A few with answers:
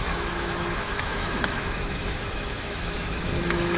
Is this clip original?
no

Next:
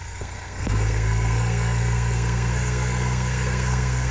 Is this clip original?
no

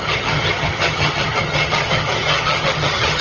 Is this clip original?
no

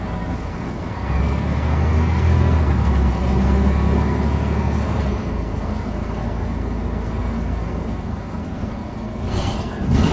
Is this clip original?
no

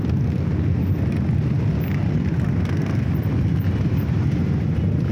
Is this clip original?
yes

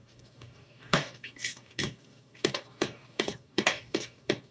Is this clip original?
no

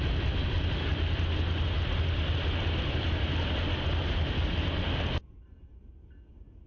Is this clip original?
yes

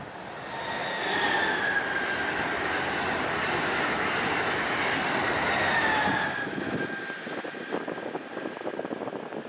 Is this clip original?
yes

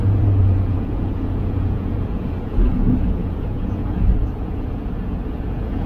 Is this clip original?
no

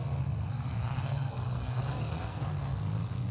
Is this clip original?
no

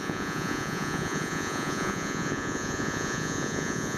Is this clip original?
no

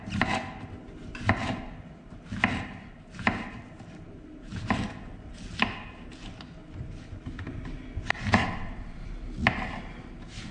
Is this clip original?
yes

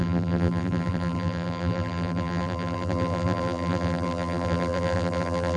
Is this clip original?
no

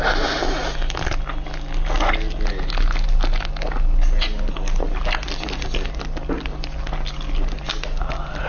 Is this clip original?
yes